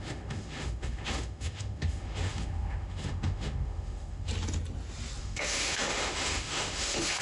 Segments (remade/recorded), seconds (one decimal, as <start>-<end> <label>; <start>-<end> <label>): 0.0-4.3 remade; 4.3-5.2 recorded; 5.2-7.2 remade